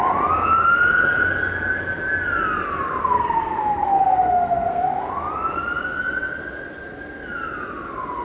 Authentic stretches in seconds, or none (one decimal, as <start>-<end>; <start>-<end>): 0.0-3.0; 5.1-8.2

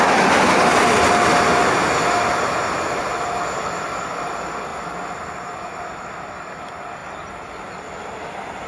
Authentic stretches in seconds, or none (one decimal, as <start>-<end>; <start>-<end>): 0.0-8.7